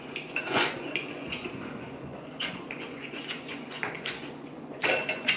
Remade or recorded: remade